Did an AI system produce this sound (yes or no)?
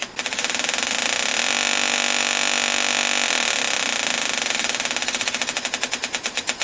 no